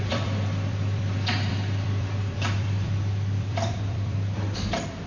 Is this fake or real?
fake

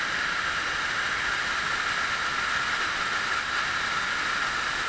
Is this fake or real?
real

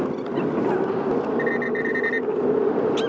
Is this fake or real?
real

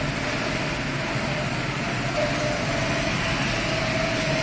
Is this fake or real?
real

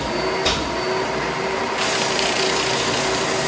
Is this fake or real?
real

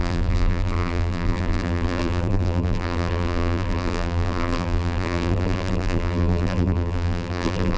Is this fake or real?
fake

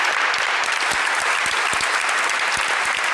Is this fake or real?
fake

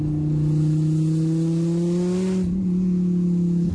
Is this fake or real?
real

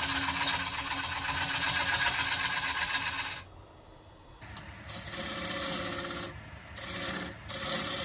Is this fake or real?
real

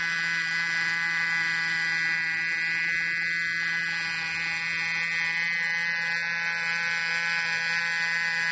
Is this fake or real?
real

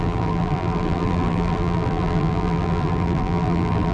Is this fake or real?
fake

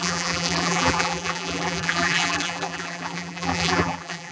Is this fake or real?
fake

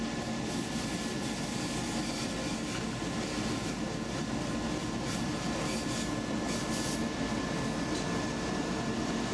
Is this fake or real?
real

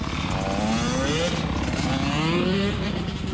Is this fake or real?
real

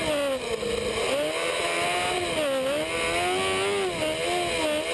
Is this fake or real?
real